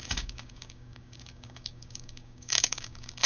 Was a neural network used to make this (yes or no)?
yes